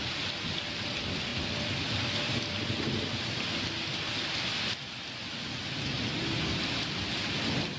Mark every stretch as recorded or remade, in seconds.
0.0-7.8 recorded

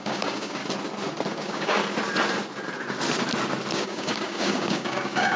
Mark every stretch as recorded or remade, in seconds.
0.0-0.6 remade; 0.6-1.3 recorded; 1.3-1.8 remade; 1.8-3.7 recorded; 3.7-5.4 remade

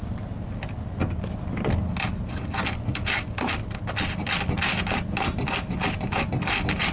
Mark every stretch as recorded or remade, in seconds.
0.0-6.9 recorded

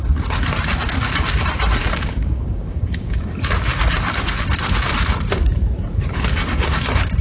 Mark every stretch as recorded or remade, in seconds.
0.0-1.8 recorded; 1.8-3.3 remade; 3.3-7.2 recorded

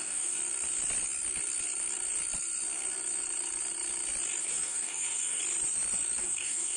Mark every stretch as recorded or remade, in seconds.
0.0-0.4 remade; 0.4-4.4 recorded; 4.4-5.4 remade; 5.4-6.2 recorded; 6.2-6.8 remade

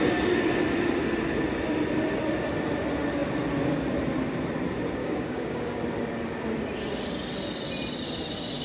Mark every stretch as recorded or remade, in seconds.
0.0-5.0 recorded; 5.0-5.8 remade; 5.8-8.6 recorded

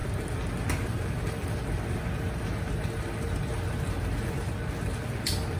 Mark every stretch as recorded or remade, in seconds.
0.0-5.6 recorded

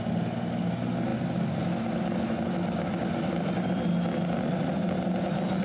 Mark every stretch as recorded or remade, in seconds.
0.0-5.6 recorded